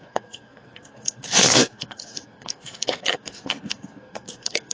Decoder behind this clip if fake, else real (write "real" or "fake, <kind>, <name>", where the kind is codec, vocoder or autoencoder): fake, codec, SNAC